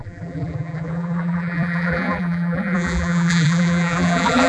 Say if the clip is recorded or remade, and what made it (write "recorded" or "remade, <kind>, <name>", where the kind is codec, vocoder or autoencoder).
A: remade, vocoder, BigVGAN v2